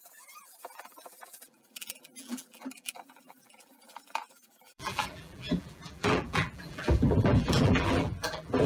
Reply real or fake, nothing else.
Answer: fake